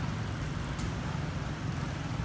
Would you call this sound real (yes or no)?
yes